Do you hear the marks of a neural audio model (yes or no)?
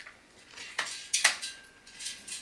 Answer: yes